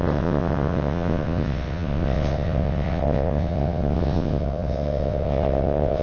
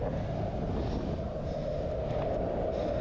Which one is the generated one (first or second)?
first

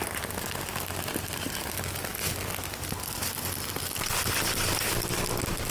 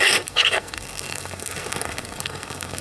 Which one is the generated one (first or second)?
second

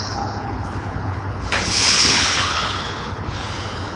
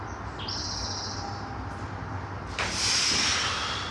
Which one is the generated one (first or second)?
first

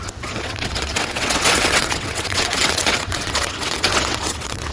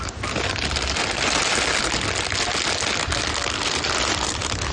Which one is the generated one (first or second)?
first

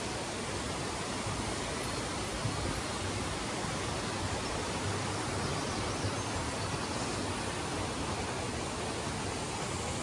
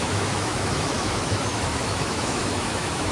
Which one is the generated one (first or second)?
second